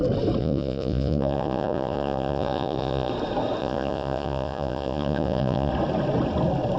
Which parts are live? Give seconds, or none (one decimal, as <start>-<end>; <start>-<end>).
0.0-0.4; 3.1-3.6; 5.7-6.8